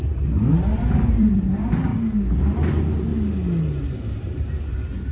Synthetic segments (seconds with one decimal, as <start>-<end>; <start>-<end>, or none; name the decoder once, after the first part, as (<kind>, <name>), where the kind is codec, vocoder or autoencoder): 0.0-1.9 (vocoder, BigVGAN v2); 2.4-3.1; 4.1-5.1